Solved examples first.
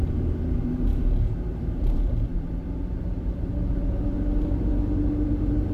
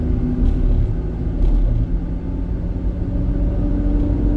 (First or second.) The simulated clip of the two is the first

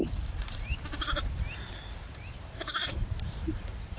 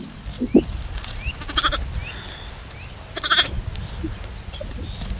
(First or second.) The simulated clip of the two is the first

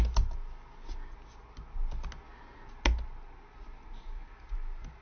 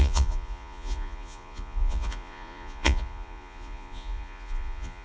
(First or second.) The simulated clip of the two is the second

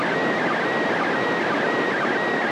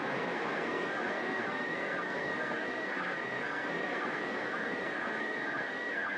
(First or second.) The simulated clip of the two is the second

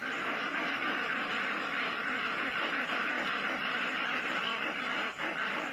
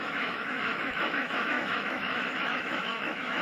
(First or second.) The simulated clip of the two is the second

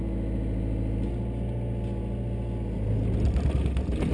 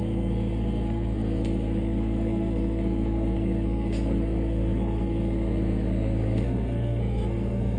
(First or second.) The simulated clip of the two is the second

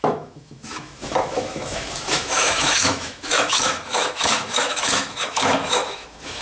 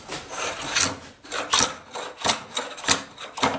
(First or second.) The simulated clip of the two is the first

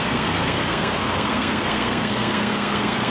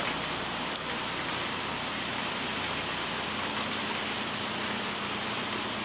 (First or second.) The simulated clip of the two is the first